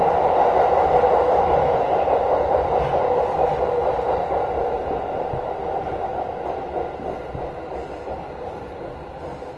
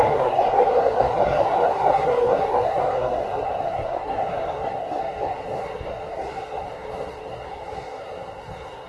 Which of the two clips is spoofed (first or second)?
second